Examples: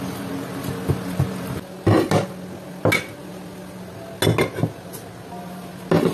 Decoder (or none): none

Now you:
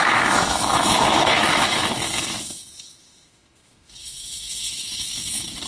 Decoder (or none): autoencoder, DAC-VAE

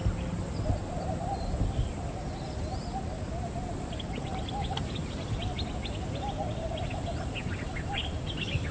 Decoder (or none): none